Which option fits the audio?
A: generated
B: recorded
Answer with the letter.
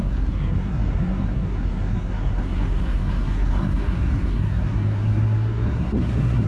A